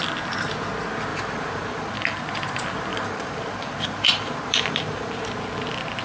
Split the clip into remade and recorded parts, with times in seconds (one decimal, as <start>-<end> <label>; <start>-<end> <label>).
0.0-1.1 recorded; 1.1-2.2 remade; 2.2-2.9 recorded; 2.9-5.2 remade; 5.2-6.0 recorded